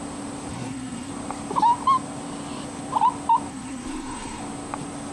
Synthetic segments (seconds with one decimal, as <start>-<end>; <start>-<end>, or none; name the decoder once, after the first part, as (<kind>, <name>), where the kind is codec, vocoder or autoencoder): 0.5-1.1 (codec, SNAC); 3.5-4.4